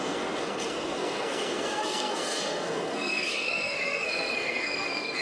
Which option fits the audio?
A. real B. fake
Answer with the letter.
B